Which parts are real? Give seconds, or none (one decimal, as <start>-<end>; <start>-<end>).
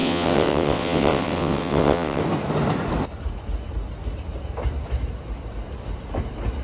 2.2-6.6